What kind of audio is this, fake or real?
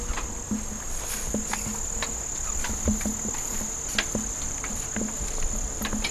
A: real